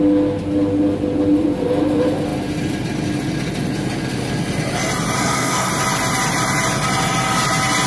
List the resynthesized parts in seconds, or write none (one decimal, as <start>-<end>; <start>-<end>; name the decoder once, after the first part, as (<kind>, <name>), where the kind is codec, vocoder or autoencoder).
5.2-5.7 (codec, SNAC)